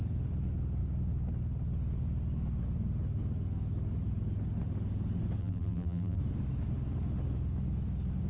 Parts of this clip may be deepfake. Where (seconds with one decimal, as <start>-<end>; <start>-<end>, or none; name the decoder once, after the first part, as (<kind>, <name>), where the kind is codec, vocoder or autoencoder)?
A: 5.4-6.2 (vocoder, BigVGAN v2)